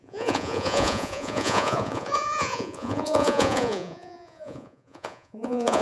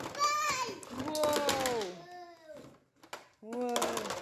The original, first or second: second